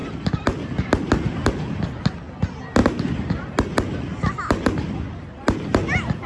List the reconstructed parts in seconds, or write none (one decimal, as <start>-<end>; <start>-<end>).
none